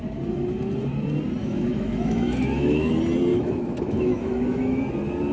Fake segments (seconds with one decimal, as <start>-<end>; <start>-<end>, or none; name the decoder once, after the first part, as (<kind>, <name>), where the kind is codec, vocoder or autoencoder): 1.4-2.9 (autoencoder, DAC-VAE); 3.3-4.8